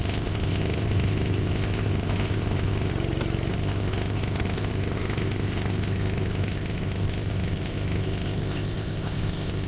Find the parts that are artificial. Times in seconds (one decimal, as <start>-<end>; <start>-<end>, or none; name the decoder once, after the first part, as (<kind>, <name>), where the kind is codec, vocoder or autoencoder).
0.0-2.9 (codec, ZipCodec); 3.5-9.7